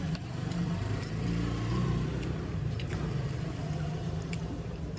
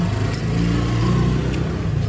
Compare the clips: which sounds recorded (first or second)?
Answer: second